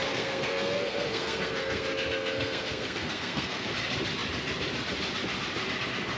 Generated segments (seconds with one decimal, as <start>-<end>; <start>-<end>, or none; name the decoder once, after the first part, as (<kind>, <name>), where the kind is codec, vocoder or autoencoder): 0.0-3.7 (codec, SNAC)